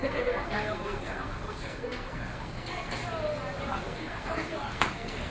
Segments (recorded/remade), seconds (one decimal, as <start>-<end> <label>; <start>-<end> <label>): 0.0-3.0 remade; 3.0-3.7 recorded; 3.7-5.3 remade